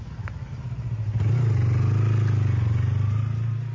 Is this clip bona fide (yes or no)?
yes